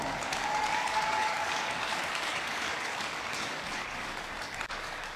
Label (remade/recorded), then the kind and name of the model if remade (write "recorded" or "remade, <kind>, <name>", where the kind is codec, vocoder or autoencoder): remade, codec, DAC